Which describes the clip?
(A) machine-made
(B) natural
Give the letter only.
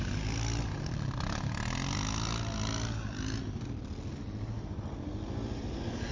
B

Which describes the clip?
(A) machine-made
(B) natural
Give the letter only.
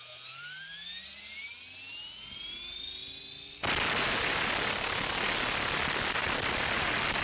B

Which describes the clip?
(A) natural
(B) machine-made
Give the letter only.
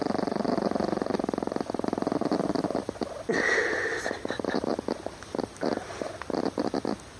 A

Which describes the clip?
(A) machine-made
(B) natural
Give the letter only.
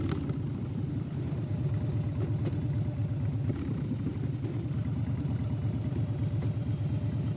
B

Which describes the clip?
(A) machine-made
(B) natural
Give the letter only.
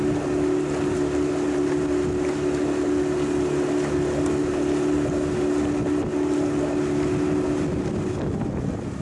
B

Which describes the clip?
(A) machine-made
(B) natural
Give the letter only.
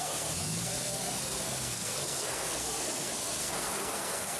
A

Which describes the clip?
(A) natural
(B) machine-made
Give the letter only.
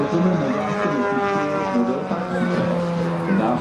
A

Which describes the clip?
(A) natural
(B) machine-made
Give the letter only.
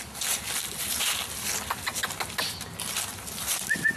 A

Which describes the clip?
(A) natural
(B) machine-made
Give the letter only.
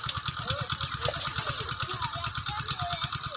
A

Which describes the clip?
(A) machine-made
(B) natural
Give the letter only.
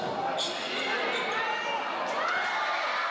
B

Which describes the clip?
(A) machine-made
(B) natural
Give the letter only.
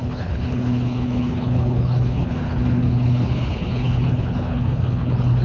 A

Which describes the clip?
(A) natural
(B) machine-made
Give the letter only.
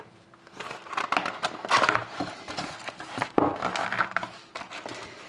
A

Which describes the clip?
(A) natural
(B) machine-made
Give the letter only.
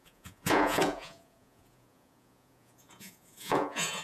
B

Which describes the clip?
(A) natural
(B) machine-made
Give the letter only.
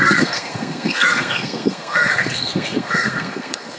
B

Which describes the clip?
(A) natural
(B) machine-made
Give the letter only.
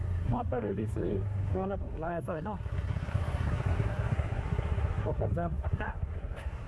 B